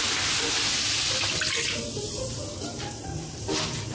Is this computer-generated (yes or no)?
no